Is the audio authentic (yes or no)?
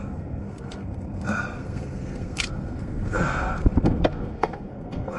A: no